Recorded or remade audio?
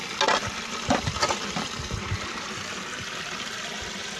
recorded